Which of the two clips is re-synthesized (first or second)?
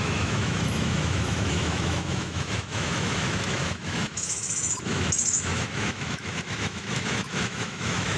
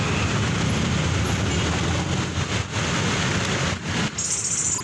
first